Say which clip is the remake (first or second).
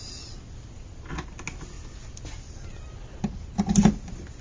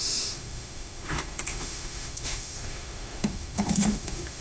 second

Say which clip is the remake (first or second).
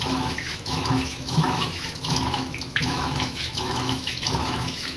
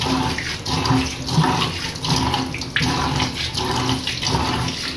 first